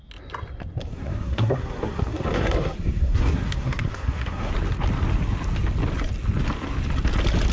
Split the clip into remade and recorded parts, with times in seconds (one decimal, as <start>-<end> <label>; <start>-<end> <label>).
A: 0.0-0.8 recorded; 0.8-4.5 remade; 4.5-7.5 recorded